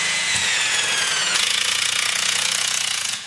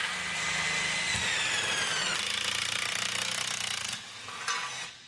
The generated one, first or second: first